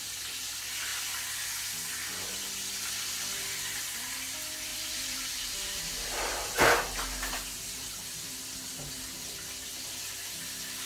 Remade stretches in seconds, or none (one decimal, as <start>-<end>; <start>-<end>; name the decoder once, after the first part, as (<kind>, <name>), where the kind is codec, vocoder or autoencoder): 4.7-8.4 (vocoder, BigVGAN v2)

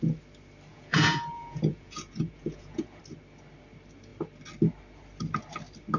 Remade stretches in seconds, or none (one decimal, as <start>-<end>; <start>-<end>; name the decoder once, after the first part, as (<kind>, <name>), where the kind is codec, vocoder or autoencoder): 0.7-3.0 (vocoder, Vocos)